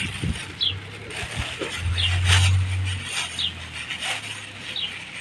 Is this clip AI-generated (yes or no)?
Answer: no